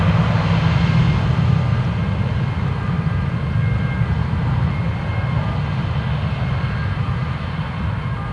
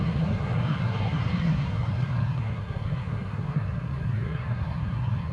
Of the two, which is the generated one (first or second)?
second